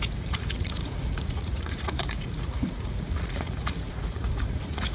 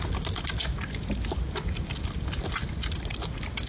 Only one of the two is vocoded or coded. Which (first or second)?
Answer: first